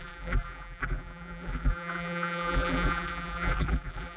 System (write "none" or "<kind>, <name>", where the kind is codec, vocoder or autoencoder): vocoder, BigVGAN v2